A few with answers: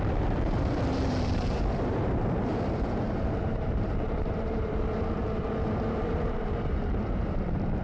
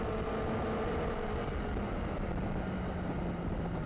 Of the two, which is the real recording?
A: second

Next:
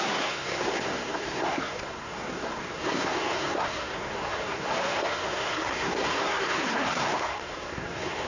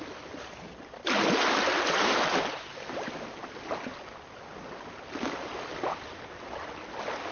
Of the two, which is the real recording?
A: second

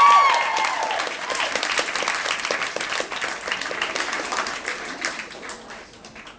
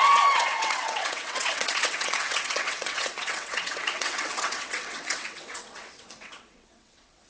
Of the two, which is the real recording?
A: first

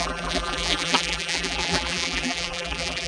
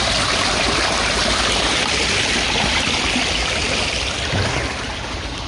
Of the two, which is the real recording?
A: second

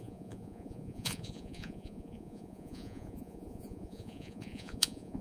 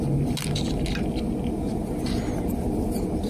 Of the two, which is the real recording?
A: second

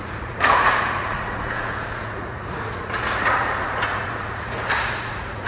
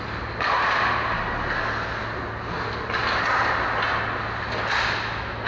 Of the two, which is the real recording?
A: second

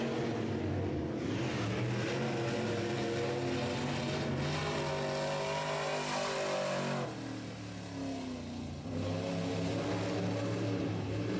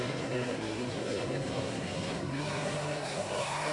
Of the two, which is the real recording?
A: first